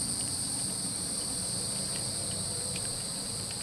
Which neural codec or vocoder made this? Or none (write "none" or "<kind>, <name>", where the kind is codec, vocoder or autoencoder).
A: vocoder, BigVGAN v2